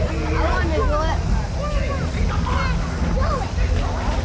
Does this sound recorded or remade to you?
recorded